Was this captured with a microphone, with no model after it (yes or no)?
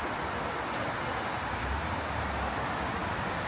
yes